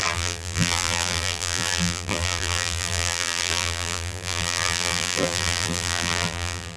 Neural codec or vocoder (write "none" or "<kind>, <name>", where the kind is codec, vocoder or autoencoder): vocoder, BigVGAN v2